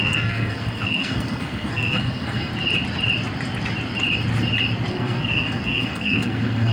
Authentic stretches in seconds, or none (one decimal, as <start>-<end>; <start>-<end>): 2.5-4.9